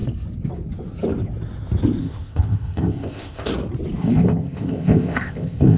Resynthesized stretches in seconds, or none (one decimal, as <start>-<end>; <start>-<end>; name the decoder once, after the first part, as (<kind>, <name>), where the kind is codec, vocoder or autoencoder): 2.0-3.5 (codec, ZipCodec); 4.0-5.8